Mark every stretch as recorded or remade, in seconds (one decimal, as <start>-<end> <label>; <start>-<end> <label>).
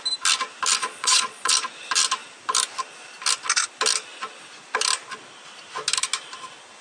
0.0-0.8 recorded; 0.8-1.5 remade; 1.5-6.8 recorded